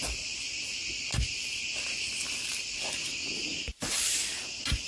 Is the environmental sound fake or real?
real